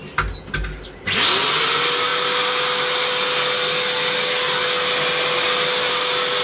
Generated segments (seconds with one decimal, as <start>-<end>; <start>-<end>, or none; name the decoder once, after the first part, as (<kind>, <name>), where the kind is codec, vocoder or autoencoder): none